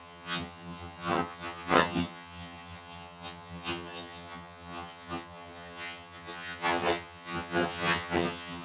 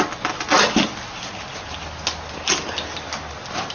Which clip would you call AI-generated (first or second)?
first